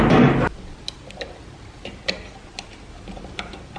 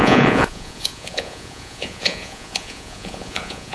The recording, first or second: first